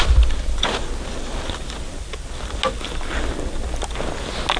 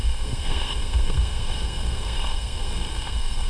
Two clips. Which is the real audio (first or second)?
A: first